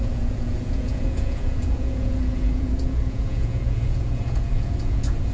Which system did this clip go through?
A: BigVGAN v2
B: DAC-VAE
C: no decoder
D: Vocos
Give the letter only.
D